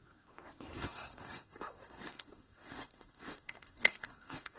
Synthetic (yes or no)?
yes